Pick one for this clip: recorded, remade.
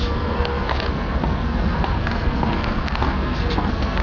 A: remade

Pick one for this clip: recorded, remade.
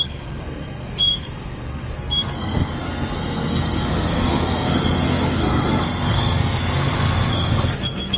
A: remade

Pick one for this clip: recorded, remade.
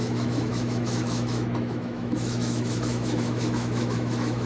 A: remade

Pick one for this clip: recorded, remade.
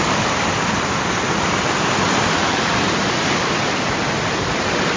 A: recorded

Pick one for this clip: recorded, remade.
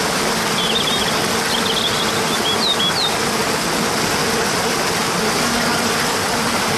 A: recorded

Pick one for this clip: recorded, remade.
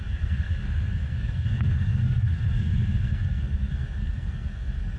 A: remade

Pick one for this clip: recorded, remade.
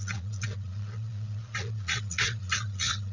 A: remade